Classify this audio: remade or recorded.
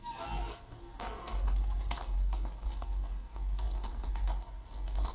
remade